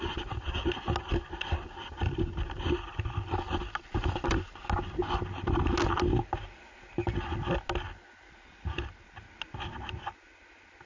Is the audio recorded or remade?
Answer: recorded